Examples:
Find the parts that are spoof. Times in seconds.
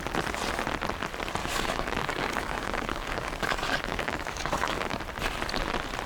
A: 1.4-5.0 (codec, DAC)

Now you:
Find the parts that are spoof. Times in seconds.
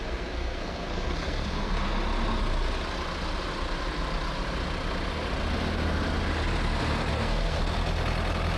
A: 0.0-1.8 (codec, SNAC); 7.1-7.6